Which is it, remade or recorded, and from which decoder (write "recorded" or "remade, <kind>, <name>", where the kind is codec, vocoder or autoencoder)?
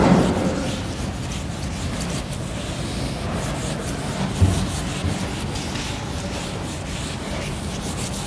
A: recorded